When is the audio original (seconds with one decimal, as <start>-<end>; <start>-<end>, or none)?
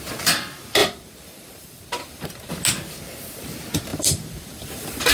0.0-0.8; 2.5-3.9